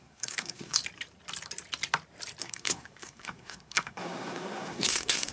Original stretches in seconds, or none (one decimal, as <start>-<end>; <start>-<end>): 0.8-2.4